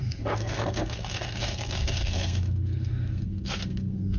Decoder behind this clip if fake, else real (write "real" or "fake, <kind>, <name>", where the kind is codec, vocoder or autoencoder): fake, codec, SNAC